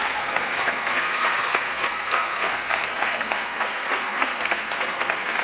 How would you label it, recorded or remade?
remade